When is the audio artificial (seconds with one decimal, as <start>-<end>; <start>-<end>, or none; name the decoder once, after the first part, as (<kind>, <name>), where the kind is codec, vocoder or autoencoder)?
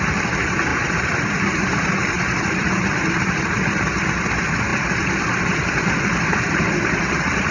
0.7-1.8 (vocoder, BigVGAN v2)